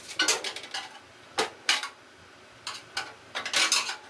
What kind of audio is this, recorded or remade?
recorded